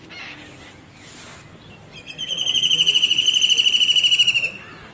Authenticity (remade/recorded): recorded